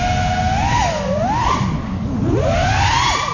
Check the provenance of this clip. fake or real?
real